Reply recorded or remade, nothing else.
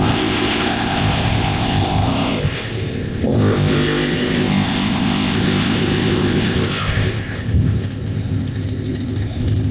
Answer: remade